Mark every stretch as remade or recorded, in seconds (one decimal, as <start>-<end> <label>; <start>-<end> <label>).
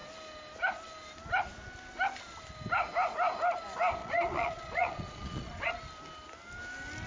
0.0-4.0 recorded; 4.0-5.7 remade; 5.7-7.1 recorded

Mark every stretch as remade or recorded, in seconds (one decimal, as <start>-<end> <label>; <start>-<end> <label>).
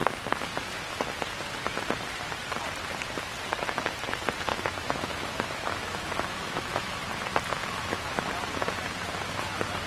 0.0-4.5 recorded; 4.5-7.1 remade; 7.1-7.6 recorded; 7.6-8.3 remade; 8.3-9.9 recorded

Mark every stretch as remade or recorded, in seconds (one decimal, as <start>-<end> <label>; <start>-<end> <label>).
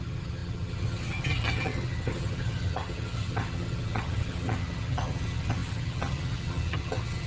0.0-7.3 remade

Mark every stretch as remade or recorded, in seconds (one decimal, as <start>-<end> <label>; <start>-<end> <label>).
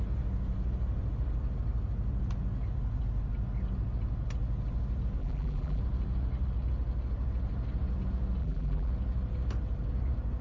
0.0-5.2 recorded; 5.2-5.8 remade; 5.8-8.4 recorded; 8.4-8.9 remade; 8.9-10.4 recorded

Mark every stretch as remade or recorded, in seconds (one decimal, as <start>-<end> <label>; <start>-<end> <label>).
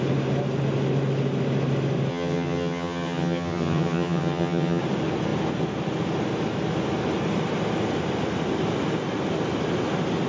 0.0-2.1 recorded; 2.1-4.8 remade; 4.8-10.3 recorded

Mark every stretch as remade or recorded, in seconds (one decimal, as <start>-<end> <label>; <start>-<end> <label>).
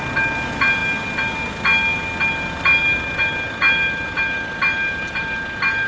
0.0-5.9 recorded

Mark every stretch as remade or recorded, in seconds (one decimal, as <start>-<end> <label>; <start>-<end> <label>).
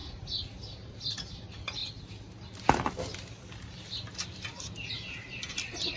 0.0-6.0 recorded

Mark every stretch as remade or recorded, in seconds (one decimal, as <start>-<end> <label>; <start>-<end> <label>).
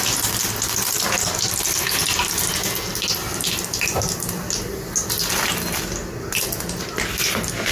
0.0-7.7 recorded